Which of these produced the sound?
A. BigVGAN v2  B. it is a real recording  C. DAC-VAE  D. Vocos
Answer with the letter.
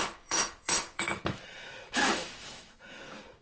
C